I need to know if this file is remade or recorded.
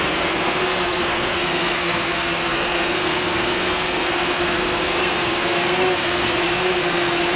remade